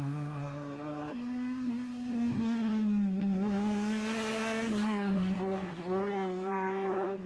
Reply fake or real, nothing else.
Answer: fake